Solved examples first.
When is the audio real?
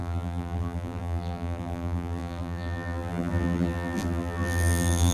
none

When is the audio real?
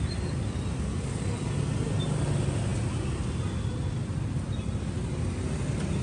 0.0-6.0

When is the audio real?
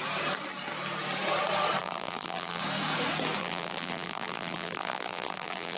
0.0-1.8; 2.6-3.4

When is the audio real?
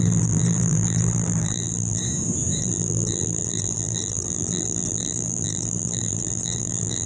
2.0-2.6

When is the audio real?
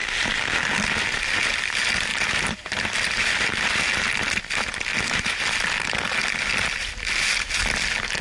0.0-2.1; 3.9-4.9; 5.4-8.2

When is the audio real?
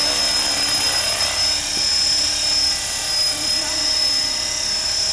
0.0-5.1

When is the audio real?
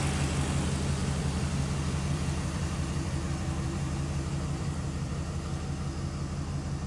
0.0-1.0; 5.1-6.9